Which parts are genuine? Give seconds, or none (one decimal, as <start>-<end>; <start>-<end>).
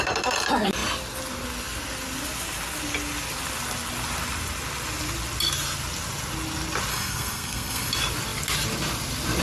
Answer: 0.0-6.9; 7.9-9.4